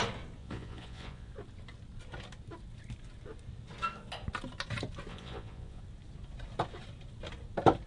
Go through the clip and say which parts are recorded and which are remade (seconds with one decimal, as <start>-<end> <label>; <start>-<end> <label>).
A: 0.0-0.4 recorded; 0.4-1.3 remade; 1.3-5.1 recorded; 5.1-5.8 remade; 5.8-7.9 recorded